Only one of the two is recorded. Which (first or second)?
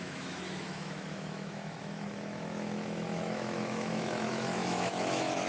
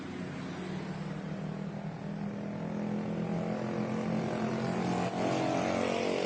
second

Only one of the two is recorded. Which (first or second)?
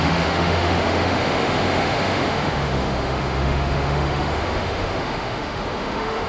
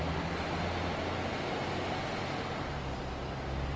second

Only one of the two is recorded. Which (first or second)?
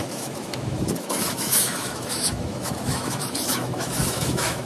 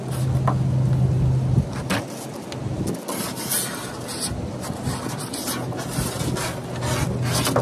second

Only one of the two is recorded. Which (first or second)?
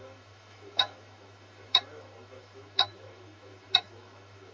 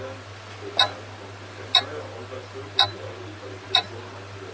second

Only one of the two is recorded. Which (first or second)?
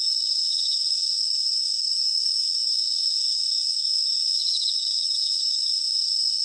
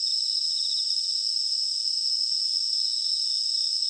second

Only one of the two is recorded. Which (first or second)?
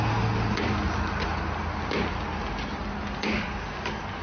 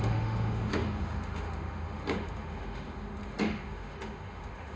first